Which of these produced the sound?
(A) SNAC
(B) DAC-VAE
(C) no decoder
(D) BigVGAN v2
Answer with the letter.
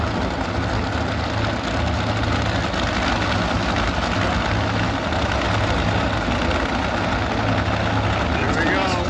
C